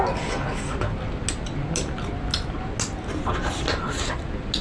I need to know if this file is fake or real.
real